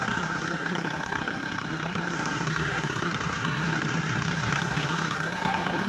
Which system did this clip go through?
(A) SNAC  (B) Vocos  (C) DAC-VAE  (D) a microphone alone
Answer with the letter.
A